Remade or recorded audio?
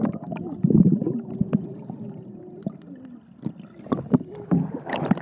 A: recorded